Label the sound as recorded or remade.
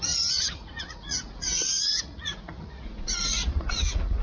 remade